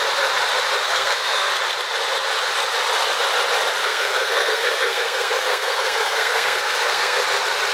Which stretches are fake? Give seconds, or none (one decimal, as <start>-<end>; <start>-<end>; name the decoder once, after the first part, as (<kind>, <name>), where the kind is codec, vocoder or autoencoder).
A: 0.8-1.5 (codec, SNAC); 3.8-7.2